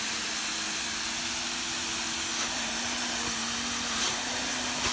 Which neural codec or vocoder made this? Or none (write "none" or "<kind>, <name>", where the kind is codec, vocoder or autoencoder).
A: none